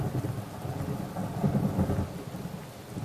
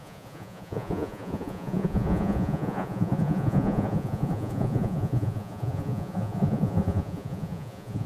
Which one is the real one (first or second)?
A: first